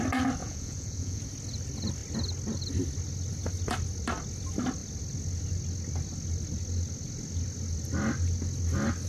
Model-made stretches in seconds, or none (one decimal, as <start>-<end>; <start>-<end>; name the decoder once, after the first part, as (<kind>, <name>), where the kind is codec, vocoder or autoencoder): 0.4-1.2 (vocoder, Vocos)